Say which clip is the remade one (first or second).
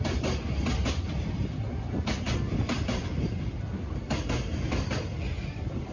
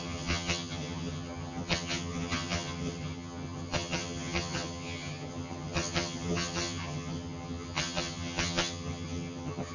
second